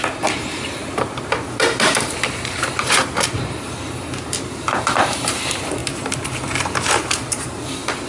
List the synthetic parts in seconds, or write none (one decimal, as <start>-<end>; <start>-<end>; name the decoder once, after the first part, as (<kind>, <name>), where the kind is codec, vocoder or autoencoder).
0.0-5.8 (vocoder, BigVGAN v2); 6.9-8.1